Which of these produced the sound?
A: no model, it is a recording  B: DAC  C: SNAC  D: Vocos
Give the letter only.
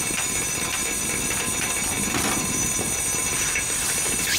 A